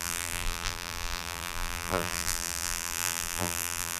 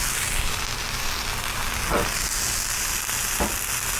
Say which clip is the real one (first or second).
second